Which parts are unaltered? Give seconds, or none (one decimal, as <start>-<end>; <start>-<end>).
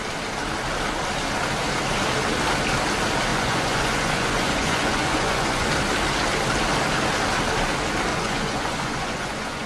0.0-3.3; 5.7-8.1